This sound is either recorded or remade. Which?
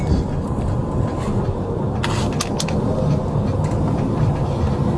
recorded